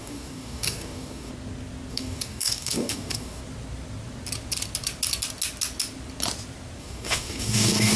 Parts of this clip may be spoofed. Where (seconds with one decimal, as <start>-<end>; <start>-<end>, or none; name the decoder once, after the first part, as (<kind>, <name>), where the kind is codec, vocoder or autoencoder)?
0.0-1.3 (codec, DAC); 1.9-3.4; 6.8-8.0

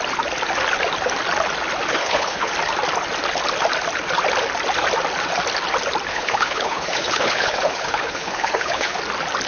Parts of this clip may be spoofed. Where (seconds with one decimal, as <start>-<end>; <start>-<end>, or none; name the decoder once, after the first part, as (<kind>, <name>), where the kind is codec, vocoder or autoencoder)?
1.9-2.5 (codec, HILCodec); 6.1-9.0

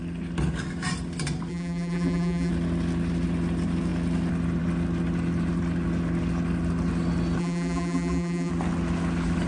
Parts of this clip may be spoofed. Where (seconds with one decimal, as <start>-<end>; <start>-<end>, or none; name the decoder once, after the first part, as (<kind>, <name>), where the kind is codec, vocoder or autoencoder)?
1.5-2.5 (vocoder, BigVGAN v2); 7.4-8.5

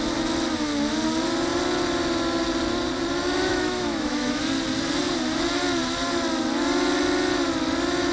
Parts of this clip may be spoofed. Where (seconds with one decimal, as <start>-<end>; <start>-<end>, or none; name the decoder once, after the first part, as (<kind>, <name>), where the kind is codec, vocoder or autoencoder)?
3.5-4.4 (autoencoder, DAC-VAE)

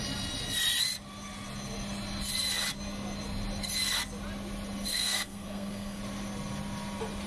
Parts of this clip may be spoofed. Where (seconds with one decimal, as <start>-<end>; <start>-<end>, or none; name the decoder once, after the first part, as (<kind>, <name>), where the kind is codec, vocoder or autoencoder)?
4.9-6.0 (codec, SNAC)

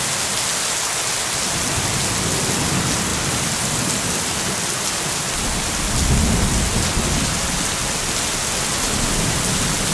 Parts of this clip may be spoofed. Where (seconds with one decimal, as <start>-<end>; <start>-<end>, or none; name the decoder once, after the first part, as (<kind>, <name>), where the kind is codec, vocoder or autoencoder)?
none

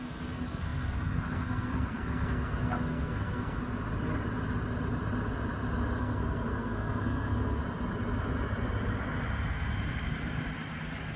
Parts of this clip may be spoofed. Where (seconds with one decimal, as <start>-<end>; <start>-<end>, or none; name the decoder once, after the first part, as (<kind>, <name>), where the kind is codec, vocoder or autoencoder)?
0.0-3.6 (codec, SNAC); 6.0-7.6